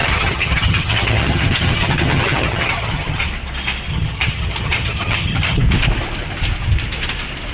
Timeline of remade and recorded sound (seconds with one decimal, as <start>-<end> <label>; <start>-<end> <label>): 0.0-3.3 remade; 3.3-3.9 recorded; 3.9-5.6 remade; 5.6-7.5 recorded